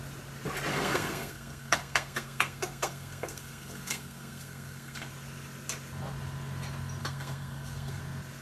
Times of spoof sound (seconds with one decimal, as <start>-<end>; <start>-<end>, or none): 0.7-5.1; 7.0-8.0